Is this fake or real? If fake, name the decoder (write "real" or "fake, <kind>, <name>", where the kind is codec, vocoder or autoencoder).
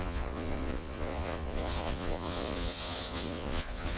fake, vocoder, Vocos